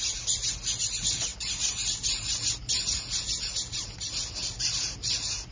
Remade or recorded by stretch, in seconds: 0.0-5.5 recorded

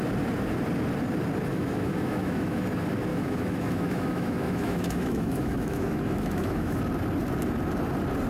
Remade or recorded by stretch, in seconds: 0.0-1.5 recorded; 1.5-2.6 remade; 2.6-3.1 recorded; 3.1-6.8 remade; 6.8-8.3 recorded

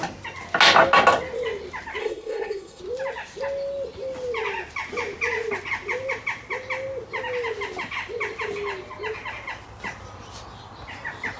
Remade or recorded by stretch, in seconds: 0.0-2.0 recorded; 2.0-2.8 remade; 2.8-11.4 recorded

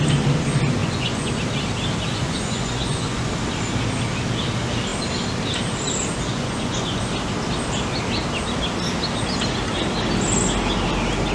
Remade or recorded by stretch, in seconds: 0.0-0.8 recorded; 0.8-1.3 remade; 1.3-2.1 recorded; 2.1-3.2 remade; 3.2-6.3 recorded; 6.3-7.0 remade; 7.0-11.3 recorded

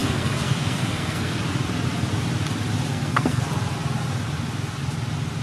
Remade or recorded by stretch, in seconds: 0.0-1.4 remade; 1.4-2.9 recorded; 2.9-3.4 remade; 3.4-5.4 recorded

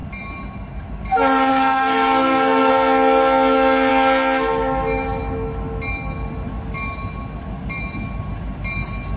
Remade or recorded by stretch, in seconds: 0.0-1.5 recorded; 1.5-2.7 remade; 2.7-9.2 recorded

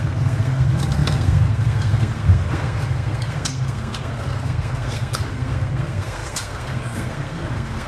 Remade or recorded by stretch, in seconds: 0.0-7.9 remade

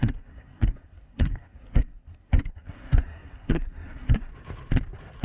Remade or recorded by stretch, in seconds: 0.0-4.3 remade; 4.3-5.2 recorded